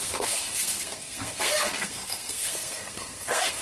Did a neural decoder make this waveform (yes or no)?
yes